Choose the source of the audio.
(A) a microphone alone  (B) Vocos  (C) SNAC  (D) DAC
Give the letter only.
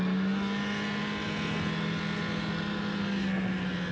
A